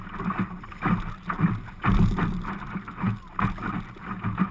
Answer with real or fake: real